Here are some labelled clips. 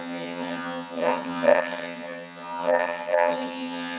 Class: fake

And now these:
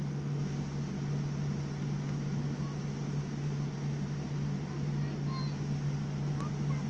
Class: real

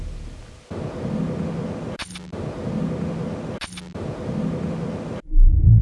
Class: real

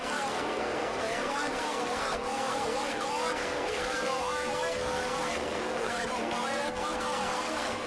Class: fake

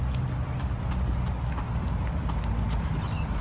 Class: real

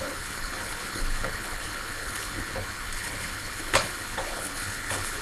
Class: fake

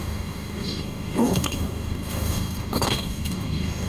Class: fake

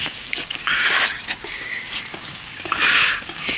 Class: fake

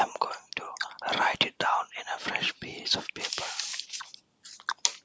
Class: real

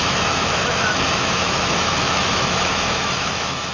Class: fake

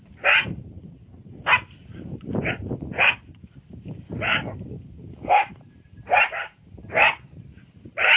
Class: fake